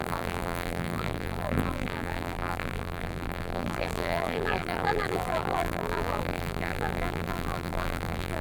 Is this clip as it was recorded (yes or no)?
no